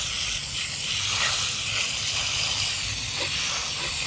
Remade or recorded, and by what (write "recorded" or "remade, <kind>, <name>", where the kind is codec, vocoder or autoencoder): recorded